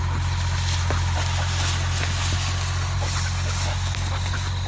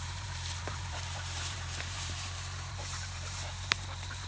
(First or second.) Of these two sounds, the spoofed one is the second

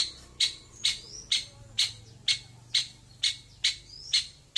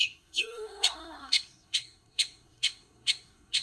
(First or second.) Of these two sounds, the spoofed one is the second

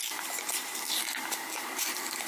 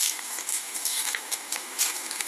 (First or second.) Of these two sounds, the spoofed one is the second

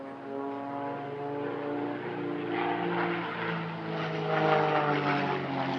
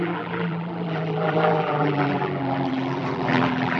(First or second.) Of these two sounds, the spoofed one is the second